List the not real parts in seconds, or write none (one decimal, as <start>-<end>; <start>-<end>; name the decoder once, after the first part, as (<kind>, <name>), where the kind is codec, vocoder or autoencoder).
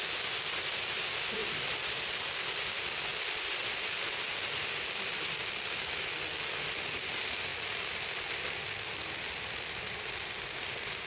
none